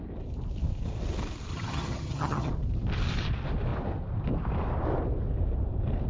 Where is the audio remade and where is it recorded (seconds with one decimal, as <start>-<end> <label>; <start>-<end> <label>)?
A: 0.0-1.5 recorded; 1.5-2.5 remade; 2.5-6.1 recorded